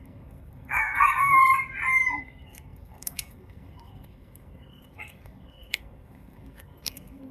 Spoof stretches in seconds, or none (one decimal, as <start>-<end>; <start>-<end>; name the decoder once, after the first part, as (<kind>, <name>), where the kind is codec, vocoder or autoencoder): 0.0-1.4 (codec, SNAC); 2.2-7.3